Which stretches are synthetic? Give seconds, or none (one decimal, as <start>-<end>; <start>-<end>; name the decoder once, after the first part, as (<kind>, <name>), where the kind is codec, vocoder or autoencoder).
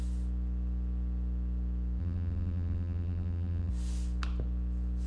2.0-3.7 (vocoder, BigVGAN v2)